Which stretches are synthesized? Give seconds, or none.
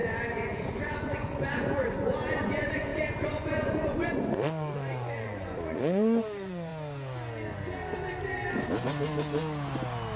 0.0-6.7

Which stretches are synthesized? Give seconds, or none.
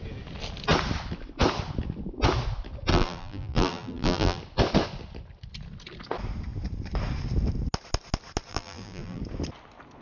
2.9-4.4; 8.5-9.2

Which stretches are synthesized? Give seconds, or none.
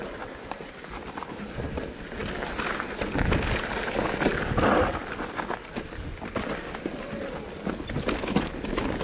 none